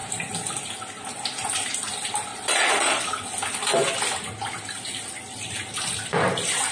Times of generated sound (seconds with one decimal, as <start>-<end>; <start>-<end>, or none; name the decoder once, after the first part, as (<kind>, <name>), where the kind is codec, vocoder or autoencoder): 2.3-3.0 (vocoder, Vocos)